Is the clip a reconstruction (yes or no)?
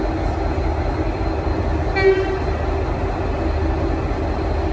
no